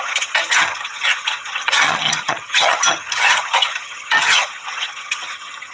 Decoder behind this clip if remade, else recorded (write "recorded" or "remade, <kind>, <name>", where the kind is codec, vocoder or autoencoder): remade, vocoder, HiFi-GAN